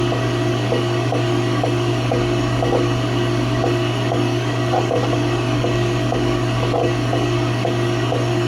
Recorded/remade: remade